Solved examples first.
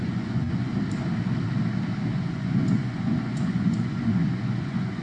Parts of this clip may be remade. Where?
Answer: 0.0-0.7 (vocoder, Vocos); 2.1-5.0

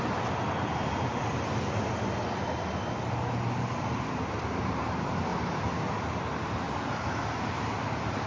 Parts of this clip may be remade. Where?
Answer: 0.0-1.1 (vocoder, BigVGAN v2); 4.6-5.3; 7.1-8.3

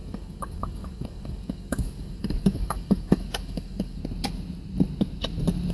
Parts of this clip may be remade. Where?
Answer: 0.0-4.0 (codec, DAC)

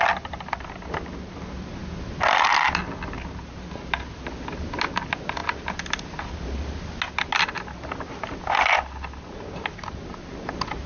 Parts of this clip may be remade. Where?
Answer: none

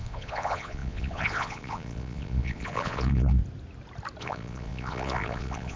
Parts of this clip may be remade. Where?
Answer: 0.0-3.4 (vocoder, Vocos); 4.2-5.8

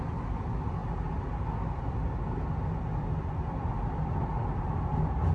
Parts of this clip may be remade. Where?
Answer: none

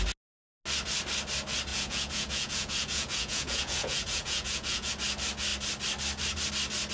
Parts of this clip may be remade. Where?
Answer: 1.7-4.9 (vocoder, Vocos)